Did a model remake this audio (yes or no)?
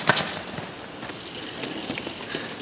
no